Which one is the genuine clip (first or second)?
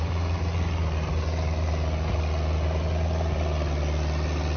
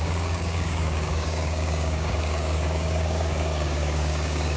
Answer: first